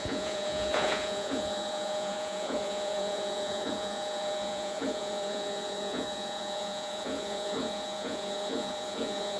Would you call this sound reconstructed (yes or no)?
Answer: yes